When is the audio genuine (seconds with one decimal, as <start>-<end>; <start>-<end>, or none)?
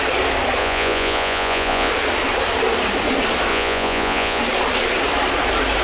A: 0.0-0.6; 1.9-3.5; 4.4-5.8